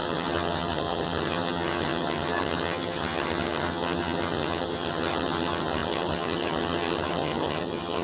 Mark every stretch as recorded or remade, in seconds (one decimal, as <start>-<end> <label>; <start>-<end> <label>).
0.0-8.0 remade